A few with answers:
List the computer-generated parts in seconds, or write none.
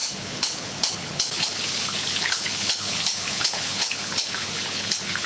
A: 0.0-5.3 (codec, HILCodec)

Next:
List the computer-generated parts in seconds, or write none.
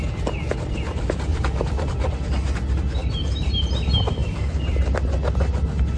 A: 1.3-2.1 (vocoder, BigVGAN v2); 3.0-3.7; 4.2-5.0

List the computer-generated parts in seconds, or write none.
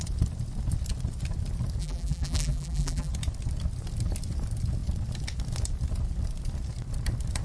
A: 1.8-3.1 (vocoder, BigVGAN v2)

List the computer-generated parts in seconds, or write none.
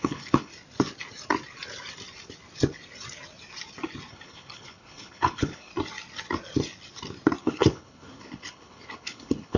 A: 0.0-0.5 (codec, HILCodec); 4.1-5.7; 7.4-9.6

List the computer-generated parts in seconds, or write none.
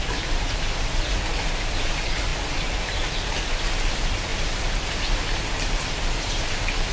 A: 0.0-1.3 (vocoder, BigVGAN v2); 1.8-4.3; 5.9-6.9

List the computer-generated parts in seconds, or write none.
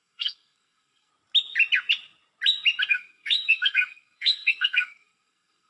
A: 0.0-1.1 (codec, SNAC); 2.9-5.7